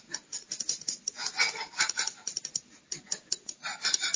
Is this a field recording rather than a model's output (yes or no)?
yes